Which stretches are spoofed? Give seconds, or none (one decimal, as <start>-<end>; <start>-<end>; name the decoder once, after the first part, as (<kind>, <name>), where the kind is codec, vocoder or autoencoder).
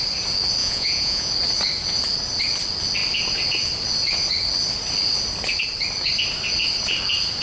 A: 0.6-1.3 (vocoder, Vocos)